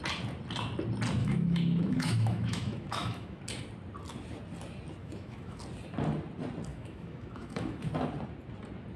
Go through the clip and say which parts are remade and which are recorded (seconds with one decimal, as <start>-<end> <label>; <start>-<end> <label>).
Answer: 0.0-1.2 recorded; 1.2-3.4 remade; 3.4-5.0 recorded; 5.0-5.6 remade; 5.6-6.7 recorded; 6.7-7.8 remade; 7.8-9.0 recorded